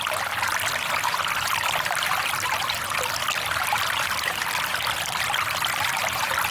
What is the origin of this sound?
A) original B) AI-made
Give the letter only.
A